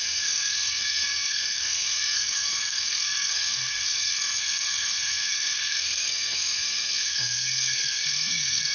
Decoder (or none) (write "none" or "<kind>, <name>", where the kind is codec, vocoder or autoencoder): codec, SNAC